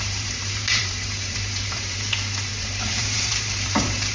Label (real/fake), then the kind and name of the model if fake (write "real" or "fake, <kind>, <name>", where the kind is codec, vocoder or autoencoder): fake, vocoder, BigVGAN v2